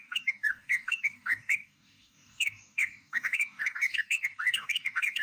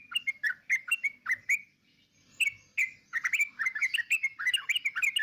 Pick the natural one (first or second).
second